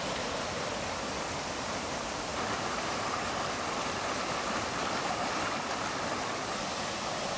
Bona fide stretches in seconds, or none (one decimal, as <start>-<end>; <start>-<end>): 0.0-7.4